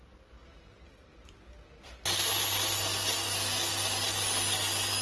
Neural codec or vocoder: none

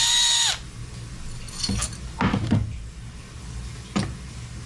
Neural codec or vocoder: none